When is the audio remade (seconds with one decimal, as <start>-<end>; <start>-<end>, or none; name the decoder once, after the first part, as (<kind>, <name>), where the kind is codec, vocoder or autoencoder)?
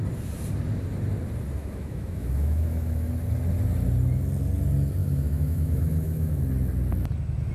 1.6-3.1 (autoencoder, DAC-VAE); 5.0-6.4